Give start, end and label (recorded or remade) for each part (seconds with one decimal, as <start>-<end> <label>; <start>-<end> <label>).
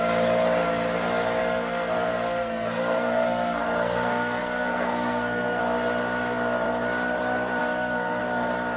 0.0-1.4 recorded; 1.4-5.6 remade; 5.6-7.6 recorded; 7.6-8.2 remade; 8.2-8.8 recorded